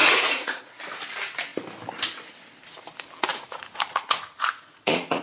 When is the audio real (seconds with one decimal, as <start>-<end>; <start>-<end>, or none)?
0.6-3.3